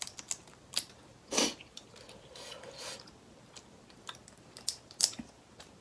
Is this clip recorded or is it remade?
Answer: recorded